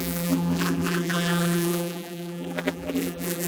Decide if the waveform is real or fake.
fake